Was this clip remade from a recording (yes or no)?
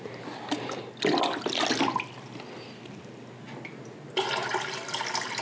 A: no